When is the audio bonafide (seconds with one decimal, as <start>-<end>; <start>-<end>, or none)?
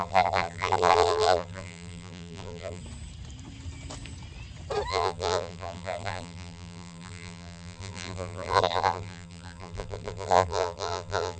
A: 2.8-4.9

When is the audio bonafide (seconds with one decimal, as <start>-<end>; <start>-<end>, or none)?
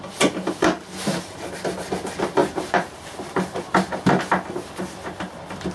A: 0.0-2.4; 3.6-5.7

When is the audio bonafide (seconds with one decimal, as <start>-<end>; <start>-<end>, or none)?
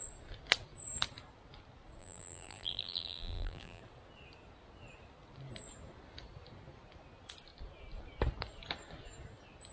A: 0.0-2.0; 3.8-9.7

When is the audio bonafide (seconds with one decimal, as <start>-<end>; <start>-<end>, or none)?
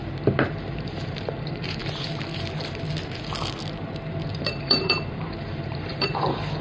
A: 0.0-0.5; 1.8-4.3